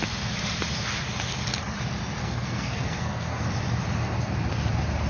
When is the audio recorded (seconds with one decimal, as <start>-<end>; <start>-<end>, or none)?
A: 0.0-2.2; 3.4-5.1